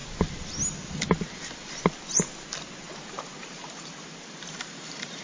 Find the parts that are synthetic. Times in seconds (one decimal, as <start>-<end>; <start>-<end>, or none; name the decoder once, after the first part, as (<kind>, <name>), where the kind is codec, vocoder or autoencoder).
3.1-5.2 (vocoder, BigVGAN v2)